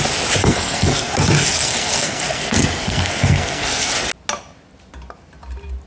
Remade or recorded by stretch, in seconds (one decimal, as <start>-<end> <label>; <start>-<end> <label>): 0.0-0.4 recorded; 0.4-3.9 remade; 3.9-5.9 recorded